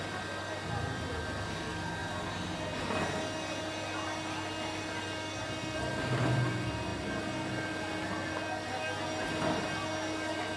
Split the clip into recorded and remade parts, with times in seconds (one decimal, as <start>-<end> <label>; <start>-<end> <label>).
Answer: 0.0-2.0 remade; 2.0-3.6 recorded; 3.6-9.8 remade; 9.8-10.6 recorded